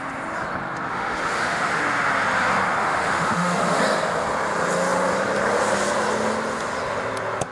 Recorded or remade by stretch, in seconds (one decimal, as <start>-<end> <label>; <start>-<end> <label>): 0.0-0.9 recorded; 0.9-1.8 remade; 1.8-2.8 recorded; 2.8-3.8 remade; 3.8-7.5 recorded